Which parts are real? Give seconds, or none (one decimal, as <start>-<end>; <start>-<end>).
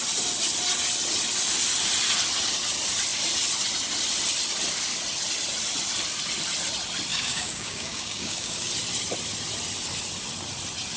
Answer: 0.0-7.1; 8.7-11.0